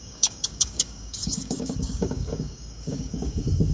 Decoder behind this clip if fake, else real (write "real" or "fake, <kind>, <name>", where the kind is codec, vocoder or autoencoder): fake, codec, DAC